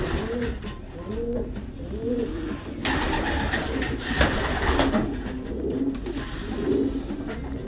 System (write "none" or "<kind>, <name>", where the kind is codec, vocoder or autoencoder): none